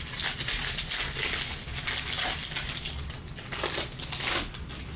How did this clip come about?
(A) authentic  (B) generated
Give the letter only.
A